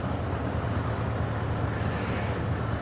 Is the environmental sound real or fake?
real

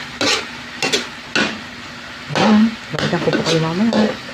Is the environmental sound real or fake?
real